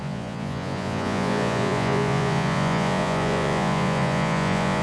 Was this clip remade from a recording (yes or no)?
yes